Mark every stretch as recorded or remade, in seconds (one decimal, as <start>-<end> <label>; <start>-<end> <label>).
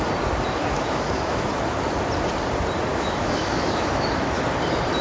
0.0-0.6 recorded; 0.6-1.5 remade; 1.5-2.9 recorded; 2.9-4.4 remade; 4.4-5.0 recorded